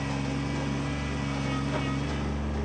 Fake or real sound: real